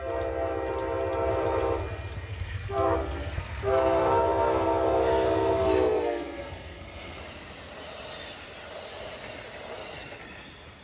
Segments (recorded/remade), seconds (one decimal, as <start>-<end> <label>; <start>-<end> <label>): 0.0-2.3 recorded; 2.3-7.2 remade; 7.2-10.8 recorded